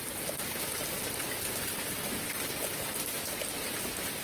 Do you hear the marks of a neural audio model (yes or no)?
no